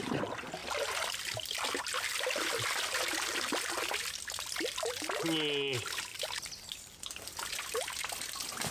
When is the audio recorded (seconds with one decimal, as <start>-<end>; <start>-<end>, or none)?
0.0-0.6; 1.8-6.1; 7.6-8.7